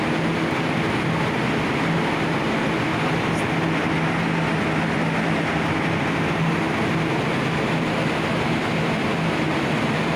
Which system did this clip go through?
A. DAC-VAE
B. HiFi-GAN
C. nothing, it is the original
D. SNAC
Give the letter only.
C